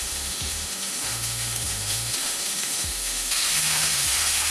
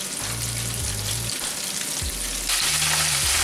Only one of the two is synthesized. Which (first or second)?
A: first